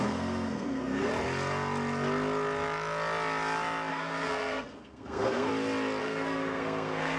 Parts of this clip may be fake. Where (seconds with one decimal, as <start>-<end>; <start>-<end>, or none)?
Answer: 0.0-1.1; 3.9-5.5; 6.0-7.2